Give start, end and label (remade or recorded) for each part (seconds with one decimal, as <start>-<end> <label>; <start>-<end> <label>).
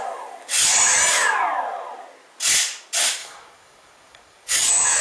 0.0-3.2 recorded; 3.2-5.0 remade